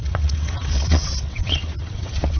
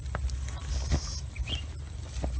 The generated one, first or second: first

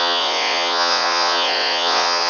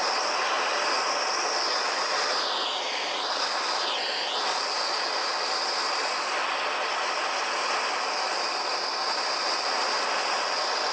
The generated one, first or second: first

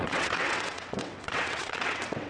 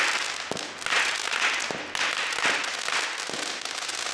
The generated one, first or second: first